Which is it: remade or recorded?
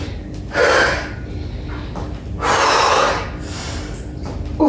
recorded